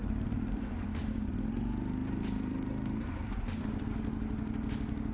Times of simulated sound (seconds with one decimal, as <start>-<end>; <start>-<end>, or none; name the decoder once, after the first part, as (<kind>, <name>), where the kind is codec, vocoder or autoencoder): 0.0-1.3 (vocoder, BigVGAN v2); 2.0-3.8